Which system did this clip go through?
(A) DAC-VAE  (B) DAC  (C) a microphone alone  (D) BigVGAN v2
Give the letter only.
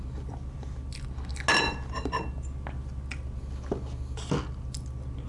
C